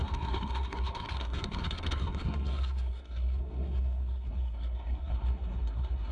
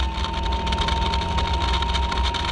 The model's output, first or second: first